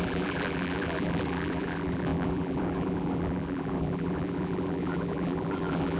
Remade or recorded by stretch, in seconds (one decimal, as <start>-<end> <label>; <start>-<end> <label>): 0.0-6.0 remade